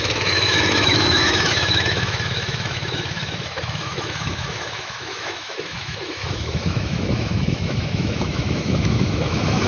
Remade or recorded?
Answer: remade